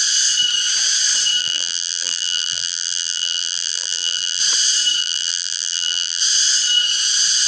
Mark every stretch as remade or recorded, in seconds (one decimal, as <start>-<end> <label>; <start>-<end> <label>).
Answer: 0.0-1.4 recorded; 1.4-4.4 remade; 4.4-5.0 recorded; 5.0-6.2 remade; 6.2-7.5 recorded